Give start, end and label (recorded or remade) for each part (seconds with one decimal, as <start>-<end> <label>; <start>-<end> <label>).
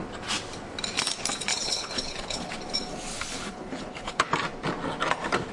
0.0-1.5 recorded; 1.5-2.5 remade; 2.5-3.1 recorded; 3.1-4.3 remade; 4.3-5.5 recorded